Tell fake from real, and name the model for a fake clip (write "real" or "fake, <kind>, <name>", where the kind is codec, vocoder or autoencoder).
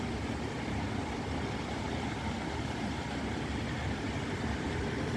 fake, vocoder, BigVGAN v2